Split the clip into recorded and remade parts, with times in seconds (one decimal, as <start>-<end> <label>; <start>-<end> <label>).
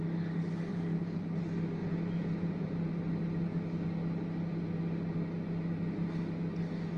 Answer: 0.0-0.7 recorded; 0.7-1.2 remade; 1.2-1.8 recorded; 1.8-2.9 remade; 2.9-7.0 recorded